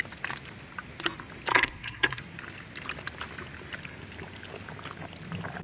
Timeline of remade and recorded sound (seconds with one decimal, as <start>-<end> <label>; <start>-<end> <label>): 0.0-1.5 recorded; 1.5-2.2 remade; 2.2-5.6 recorded